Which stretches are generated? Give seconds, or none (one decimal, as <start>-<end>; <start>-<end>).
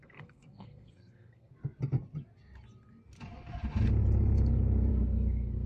0.0-1.5; 4.9-5.7